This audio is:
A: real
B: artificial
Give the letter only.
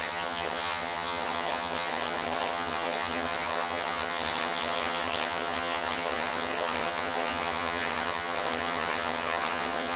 B